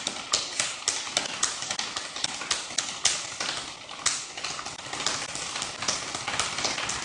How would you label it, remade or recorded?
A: recorded